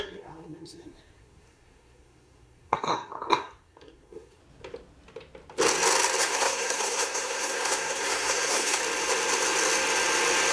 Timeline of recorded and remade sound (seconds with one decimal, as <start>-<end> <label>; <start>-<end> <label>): 0.0-4.4 remade; 4.4-6.2 recorded; 6.2-8.8 remade; 8.8-10.5 recorded